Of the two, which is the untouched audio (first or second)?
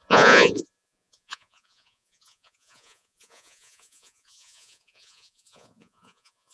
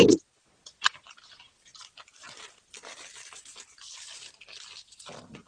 second